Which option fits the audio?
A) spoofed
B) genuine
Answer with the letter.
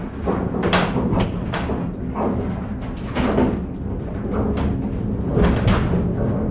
B